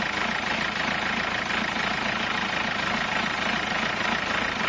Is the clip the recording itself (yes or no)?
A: yes